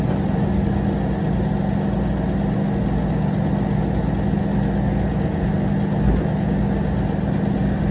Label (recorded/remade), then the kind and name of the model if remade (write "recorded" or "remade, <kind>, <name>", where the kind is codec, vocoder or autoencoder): recorded